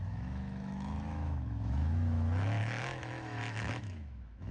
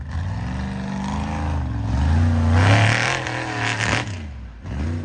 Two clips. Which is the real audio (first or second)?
second